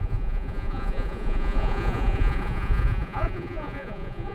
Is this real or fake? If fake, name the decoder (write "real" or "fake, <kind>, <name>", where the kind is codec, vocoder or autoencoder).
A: fake, vocoder, Vocos